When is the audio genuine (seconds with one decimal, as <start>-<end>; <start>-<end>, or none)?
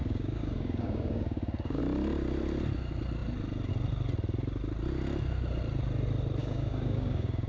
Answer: 1.8-6.4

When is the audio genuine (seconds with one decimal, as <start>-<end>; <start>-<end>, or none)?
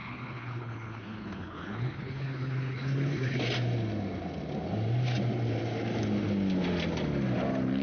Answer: 3.4-7.8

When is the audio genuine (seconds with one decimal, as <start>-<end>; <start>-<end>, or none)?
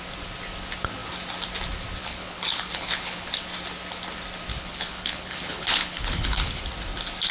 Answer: 0.0-2.0; 3.3-4.5; 6.6-7.3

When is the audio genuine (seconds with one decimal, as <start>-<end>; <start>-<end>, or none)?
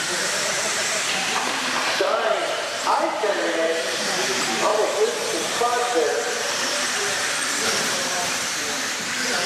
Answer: none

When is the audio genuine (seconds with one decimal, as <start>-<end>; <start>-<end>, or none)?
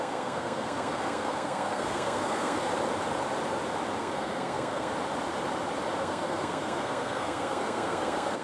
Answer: 2.7-4.0; 4.9-6.0